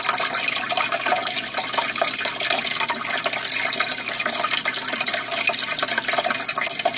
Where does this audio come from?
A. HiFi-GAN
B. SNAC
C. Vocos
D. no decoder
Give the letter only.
D